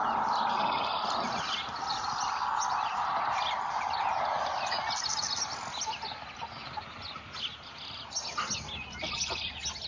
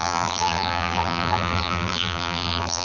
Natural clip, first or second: first